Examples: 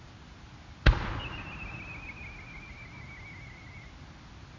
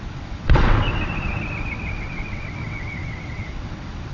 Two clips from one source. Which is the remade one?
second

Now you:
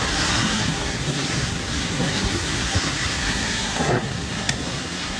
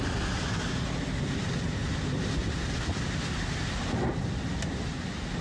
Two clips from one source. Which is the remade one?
first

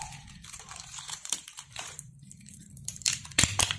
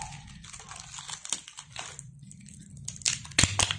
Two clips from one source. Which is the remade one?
first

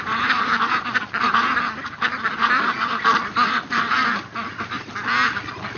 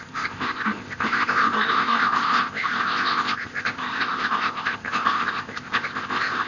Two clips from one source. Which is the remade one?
second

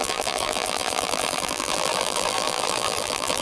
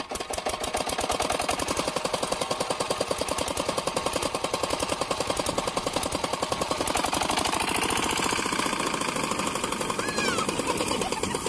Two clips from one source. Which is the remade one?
first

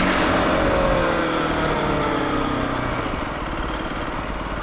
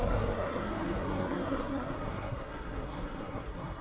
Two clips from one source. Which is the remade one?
second